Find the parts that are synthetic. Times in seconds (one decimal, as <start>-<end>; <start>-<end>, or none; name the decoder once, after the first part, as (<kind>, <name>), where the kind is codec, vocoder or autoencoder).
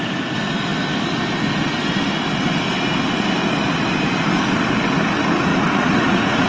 5.5-6.5 (vocoder, Vocos)